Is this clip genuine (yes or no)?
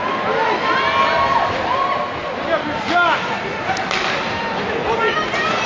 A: yes